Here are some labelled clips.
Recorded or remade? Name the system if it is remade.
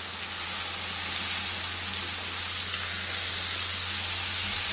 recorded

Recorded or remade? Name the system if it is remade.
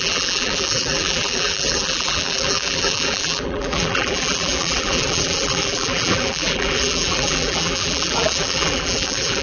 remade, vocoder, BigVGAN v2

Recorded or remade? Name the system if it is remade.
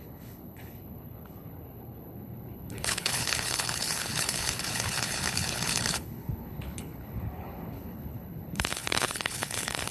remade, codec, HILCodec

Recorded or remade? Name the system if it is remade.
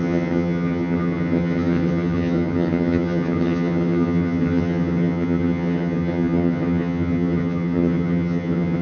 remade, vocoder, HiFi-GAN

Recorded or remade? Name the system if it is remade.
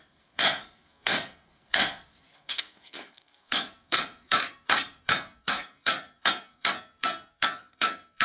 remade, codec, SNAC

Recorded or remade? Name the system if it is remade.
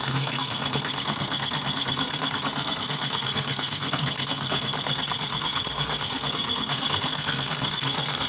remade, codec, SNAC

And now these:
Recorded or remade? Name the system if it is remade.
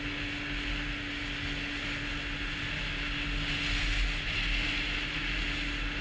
recorded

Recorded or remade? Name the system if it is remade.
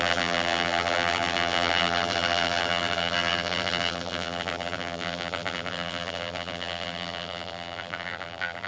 remade, vocoder, BigVGAN v2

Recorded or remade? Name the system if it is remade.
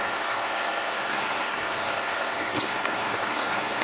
remade, codec, SNAC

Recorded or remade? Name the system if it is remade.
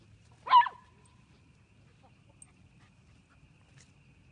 recorded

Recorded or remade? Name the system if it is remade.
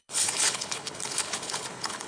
remade, codec, HILCodec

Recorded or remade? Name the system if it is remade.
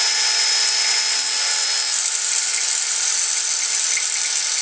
recorded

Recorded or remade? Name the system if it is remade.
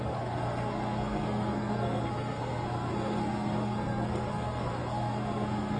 remade, codec, SNAC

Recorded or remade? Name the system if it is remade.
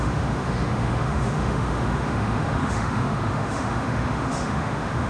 remade, autoencoder, DAC-VAE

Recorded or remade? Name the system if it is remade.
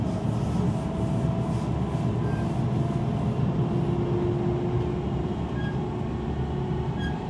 recorded